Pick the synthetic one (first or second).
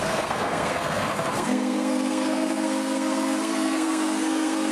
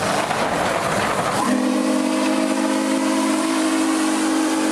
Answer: first